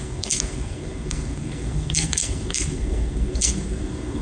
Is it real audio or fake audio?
fake